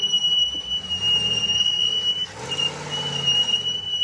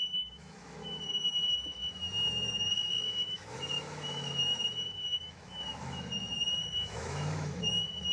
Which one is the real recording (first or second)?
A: first